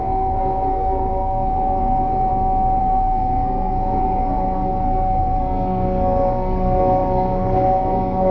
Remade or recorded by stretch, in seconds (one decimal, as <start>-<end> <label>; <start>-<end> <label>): 0.0-2.3 remade; 2.3-2.8 recorded; 2.8-8.3 remade